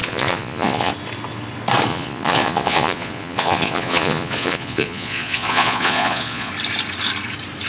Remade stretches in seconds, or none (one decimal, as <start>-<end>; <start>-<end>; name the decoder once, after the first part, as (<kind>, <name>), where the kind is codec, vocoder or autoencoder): 0.0-0.9 (vocoder, Vocos); 1.9-6.5